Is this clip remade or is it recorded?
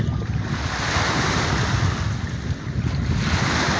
recorded